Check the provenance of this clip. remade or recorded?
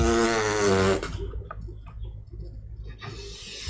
recorded